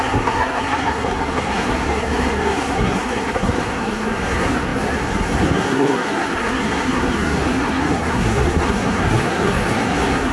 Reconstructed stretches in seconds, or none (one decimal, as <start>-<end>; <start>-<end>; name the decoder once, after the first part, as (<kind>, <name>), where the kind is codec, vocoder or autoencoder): 0.0-10.3 (codec, SNAC)